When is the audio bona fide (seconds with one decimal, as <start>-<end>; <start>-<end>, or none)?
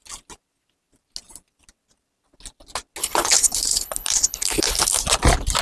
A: 0.0-3.0; 5.0-5.6